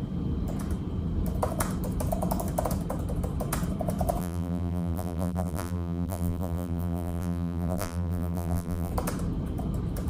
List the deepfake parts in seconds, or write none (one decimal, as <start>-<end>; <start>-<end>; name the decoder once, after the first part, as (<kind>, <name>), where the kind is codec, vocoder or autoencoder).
4.2-8.9 (vocoder, BigVGAN v2)